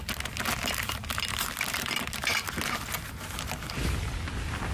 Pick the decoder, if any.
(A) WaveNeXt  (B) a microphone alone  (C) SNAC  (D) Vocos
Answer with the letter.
B